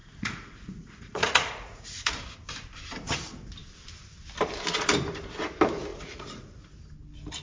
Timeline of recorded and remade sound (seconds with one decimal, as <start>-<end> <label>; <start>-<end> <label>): 0.0-2.2 remade; 2.2-5.9 recorded; 5.9-6.7 remade; 6.7-7.4 recorded